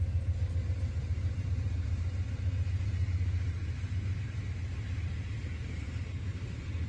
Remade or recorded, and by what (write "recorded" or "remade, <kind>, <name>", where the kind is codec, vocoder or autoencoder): remade, vocoder, BigVGAN v2